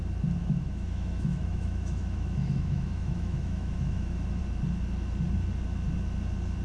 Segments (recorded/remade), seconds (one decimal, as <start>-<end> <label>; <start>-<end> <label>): 0.0-0.4 recorded; 0.4-4.4 remade; 4.4-6.6 recorded